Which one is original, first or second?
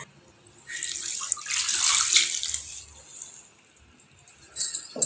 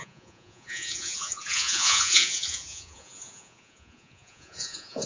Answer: first